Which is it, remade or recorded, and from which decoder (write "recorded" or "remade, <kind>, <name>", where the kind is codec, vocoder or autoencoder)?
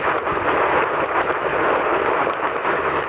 recorded